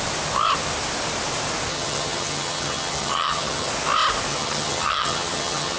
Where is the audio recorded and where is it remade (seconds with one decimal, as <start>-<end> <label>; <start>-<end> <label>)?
0.0-1.7 recorded; 1.7-3.7 remade; 3.7-4.3 recorded; 4.3-5.8 remade